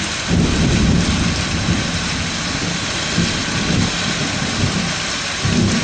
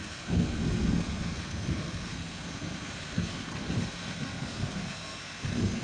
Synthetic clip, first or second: second